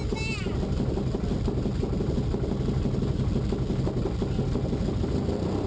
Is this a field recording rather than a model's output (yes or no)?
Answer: yes